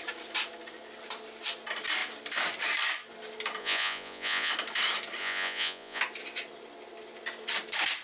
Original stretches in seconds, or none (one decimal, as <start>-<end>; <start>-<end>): 0.0-3.6; 4.5-5.2; 6.0-8.0